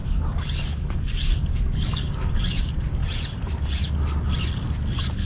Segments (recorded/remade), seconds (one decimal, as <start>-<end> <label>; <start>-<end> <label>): 0.0-2.3 remade; 2.3-5.2 recorded